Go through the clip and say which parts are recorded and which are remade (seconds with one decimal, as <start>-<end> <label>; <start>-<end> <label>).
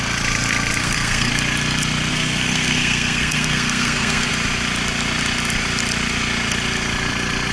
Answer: 0.0-0.8 recorded; 0.8-1.3 remade; 1.3-2.1 recorded; 2.1-4.3 remade; 4.3-7.5 recorded